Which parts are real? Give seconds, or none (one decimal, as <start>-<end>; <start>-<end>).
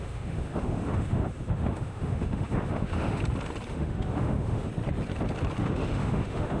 3.2-3.7; 4.7-5.6